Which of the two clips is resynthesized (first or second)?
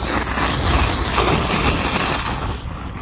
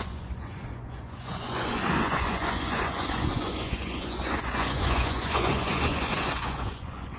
second